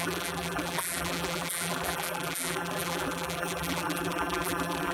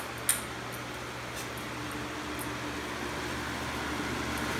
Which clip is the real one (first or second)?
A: second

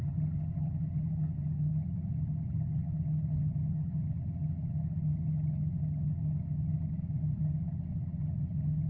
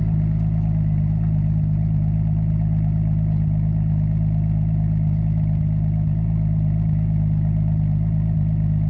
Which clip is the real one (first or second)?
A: second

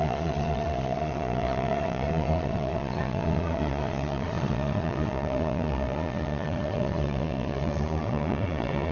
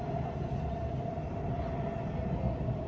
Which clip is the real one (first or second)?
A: second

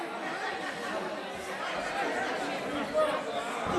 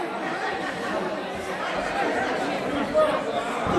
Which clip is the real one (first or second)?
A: first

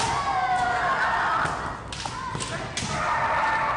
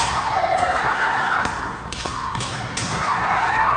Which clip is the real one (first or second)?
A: first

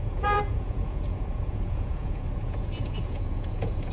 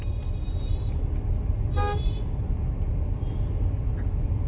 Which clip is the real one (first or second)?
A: second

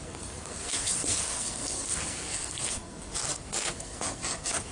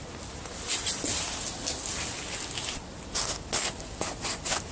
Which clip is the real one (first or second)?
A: second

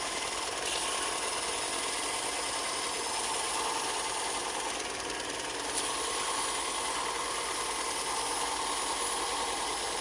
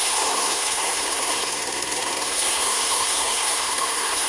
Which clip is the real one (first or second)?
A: first